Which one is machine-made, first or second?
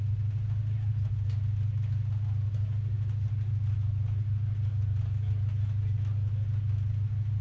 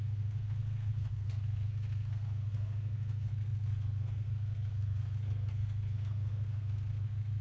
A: second